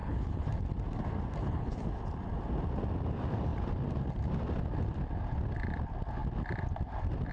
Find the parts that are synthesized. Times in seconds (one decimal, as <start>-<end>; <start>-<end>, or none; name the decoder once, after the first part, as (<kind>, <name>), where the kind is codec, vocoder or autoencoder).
0.0-0.5 (codec, HILCodec); 1.4-2.0